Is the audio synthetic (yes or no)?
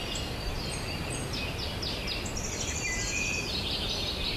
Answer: no